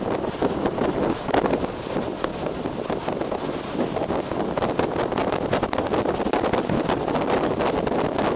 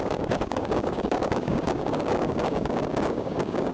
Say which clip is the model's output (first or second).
second